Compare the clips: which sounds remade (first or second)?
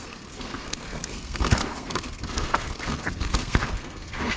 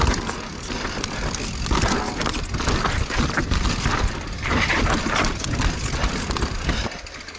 first